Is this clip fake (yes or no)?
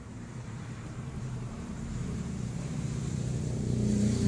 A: yes